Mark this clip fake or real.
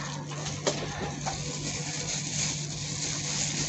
real